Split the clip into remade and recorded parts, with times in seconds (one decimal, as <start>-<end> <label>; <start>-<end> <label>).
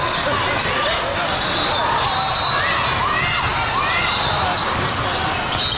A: 0.0-5.8 recorded